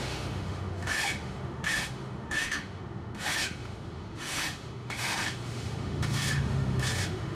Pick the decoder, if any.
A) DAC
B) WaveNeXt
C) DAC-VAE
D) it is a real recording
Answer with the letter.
C